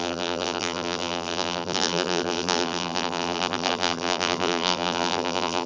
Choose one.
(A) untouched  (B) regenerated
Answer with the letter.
B